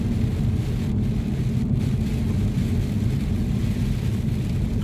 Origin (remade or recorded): recorded